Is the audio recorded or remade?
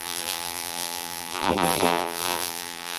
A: remade